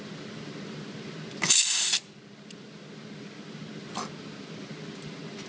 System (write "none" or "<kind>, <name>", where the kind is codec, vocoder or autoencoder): none